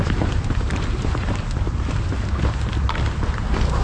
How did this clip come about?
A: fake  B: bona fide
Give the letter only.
B